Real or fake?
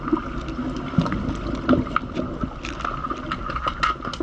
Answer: real